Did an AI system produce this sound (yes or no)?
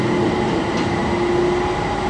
no